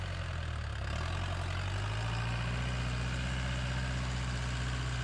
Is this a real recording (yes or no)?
yes